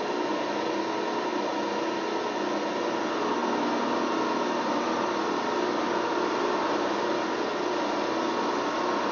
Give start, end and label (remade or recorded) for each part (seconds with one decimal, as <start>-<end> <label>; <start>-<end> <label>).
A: 0.0-9.1 recorded